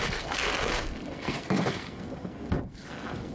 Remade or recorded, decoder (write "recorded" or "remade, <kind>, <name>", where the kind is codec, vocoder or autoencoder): remade, codec, SNAC